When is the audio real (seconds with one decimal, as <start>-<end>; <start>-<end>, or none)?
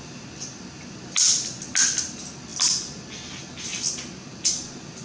0.0-5.0